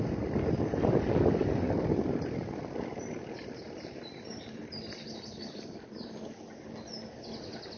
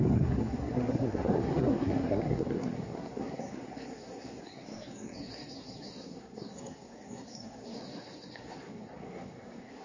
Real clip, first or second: first